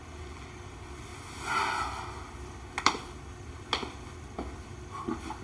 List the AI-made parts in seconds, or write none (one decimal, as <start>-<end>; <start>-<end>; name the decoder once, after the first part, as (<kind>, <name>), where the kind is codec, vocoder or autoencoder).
none

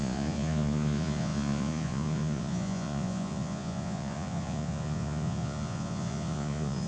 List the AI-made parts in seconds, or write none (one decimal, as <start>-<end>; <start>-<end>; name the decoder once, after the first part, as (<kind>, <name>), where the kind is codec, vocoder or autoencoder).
0.0-6.9 (vocoder, Vocos)

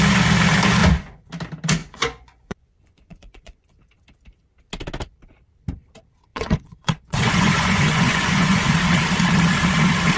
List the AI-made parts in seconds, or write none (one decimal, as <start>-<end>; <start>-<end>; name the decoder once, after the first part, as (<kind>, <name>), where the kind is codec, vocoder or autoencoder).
0.8-1.3 (vocoder, Vocos); 1.8-3.8; 6.3-8.7

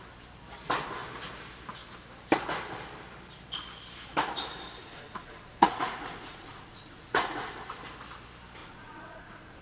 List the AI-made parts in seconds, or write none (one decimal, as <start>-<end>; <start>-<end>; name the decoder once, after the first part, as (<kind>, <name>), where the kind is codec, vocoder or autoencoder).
4.8-7.5 (vocoder, Vocos); 8.6-9.6

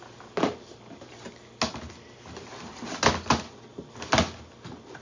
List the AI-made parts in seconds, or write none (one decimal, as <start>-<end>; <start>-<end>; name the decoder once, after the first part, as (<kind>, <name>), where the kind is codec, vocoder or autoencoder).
none

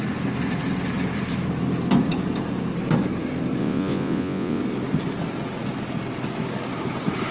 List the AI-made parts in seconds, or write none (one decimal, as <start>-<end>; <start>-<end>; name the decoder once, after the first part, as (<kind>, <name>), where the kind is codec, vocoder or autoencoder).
3.6-4.6 (vocoder, Vocos)

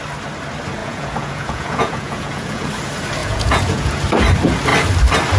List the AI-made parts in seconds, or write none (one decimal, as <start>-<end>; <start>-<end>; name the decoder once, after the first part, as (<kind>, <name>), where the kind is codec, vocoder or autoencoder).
0.8-2.7 (vocoder, Vocos); 3.2-4.0

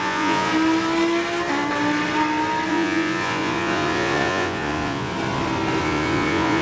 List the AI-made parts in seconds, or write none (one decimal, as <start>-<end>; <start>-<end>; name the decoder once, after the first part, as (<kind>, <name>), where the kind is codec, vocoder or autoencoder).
0.0-0.5 (vocoder, Vocos); 2.7-5.1; 5.8-6.6